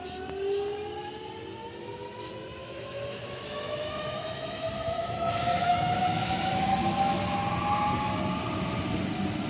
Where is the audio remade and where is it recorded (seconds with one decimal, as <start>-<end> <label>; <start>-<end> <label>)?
0.0-2.6 recorded; 2.6-6.4 remade; 6.4-9.5 recorded